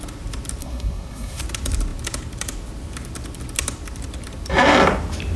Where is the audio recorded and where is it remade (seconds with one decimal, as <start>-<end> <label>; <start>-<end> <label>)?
0.0-0.6 recorded; 0.6-1.4 remade; 1.4-5.4 recorded